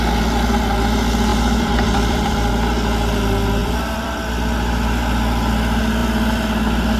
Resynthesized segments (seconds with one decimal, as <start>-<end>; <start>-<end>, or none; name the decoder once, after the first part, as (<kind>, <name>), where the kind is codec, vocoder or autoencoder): 1.3-2.5 (vocoder, BigVGAN v2); 3.6-4.3